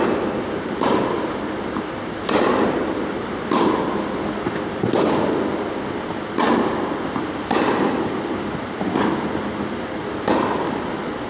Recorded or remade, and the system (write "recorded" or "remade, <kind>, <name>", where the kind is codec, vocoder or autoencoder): recorded